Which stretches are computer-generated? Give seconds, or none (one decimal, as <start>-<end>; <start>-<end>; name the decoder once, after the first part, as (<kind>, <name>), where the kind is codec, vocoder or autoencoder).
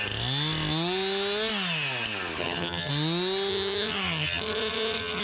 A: 2.4-2.9 (vocoder, HiFi-GAN); 3.5-5.2